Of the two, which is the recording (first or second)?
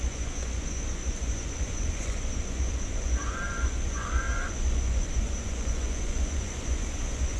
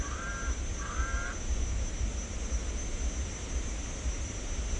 second